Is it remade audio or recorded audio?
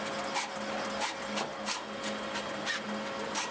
recorded